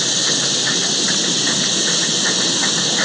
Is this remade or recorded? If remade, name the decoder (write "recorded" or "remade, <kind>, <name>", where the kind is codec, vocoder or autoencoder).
recorded